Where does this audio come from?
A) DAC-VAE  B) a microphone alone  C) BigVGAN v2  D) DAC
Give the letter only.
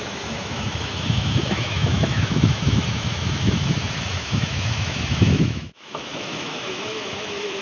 A